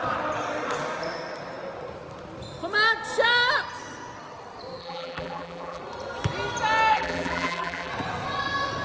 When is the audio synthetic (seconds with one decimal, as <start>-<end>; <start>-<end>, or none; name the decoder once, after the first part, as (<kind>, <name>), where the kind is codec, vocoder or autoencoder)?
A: 4.8-5.8 (vocoder, BigVGAN v2); 6.9-7.9